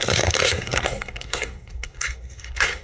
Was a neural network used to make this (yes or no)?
yes